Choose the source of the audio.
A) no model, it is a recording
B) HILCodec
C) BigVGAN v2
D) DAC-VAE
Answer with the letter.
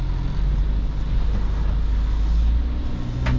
A